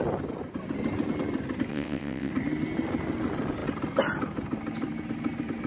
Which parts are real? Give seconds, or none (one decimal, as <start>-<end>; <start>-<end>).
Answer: 0.0-1.7; 2.3-5.7